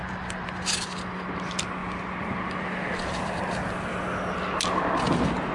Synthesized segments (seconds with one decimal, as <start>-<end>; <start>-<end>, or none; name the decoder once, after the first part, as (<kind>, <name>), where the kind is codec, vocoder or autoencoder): none